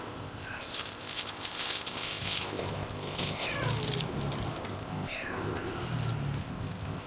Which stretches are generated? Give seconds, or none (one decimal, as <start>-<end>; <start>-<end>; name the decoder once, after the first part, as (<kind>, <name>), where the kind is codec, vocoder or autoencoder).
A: 0.0-3.5 (codec, ZipCodec); 4.6-5.8; 6.4-7.1